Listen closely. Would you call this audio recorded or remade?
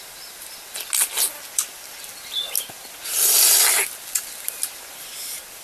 recorded